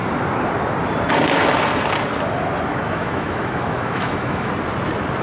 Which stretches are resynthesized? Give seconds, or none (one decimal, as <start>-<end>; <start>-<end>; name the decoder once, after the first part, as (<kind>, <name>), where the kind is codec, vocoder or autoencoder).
2.7-4.5 (autoencoder, DAC-VAE)